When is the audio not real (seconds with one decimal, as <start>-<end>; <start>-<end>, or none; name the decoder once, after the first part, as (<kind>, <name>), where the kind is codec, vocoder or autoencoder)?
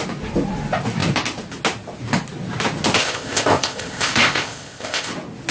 3.0-5.1 (codec, ZipCodec)